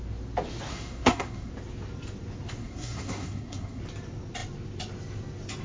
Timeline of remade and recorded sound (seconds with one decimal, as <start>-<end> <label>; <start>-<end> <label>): 0.0-0.7 recorded; 0.7-1.5 remade; 1.5-2.6 recorded; 2.6-3.8 remade; 3.8-5.6 recorded